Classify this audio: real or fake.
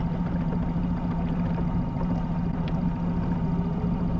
real